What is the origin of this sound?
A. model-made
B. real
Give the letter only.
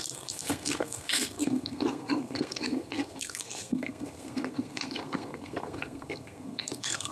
A